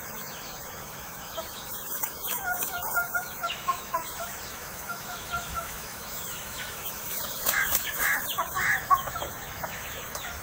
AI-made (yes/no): yes